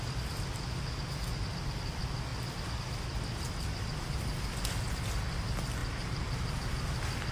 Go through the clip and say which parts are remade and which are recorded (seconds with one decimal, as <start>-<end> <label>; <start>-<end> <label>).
0.0-5.8 recorded; 5.8-6.5 remade; 6.5-7.3 recorded